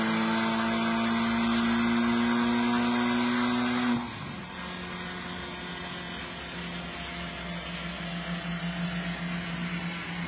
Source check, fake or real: real